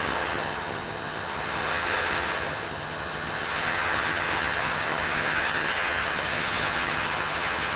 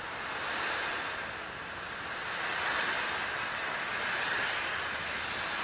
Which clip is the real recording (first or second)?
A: second